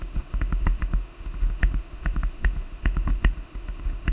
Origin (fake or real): fake